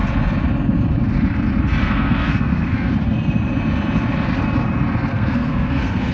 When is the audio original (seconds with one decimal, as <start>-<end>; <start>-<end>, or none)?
0.0-1.8; 2.9-5.1